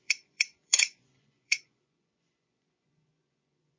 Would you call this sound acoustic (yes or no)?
no